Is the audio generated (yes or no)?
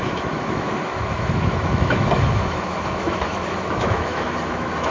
yes